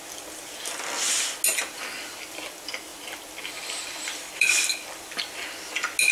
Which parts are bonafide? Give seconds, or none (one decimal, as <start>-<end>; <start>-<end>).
0.0-2.9; 5.2-6.1